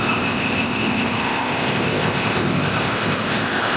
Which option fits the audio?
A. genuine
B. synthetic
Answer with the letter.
B